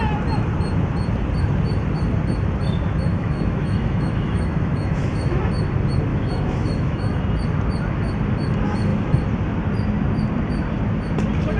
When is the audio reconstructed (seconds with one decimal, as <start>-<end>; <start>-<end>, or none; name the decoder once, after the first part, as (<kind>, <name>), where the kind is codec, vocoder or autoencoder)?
3.1-5.4 (autoencoder, DAC-VAE); 6.1-7.2